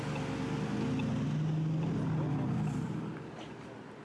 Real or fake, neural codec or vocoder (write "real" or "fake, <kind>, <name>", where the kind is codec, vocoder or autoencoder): real